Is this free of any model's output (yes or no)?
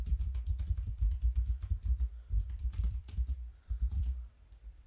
no